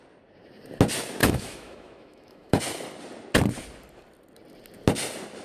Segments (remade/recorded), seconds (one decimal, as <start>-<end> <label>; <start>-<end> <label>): 0.0-1.2 recorded; 1.2-2.6 remade; 2.6-5.4 recorded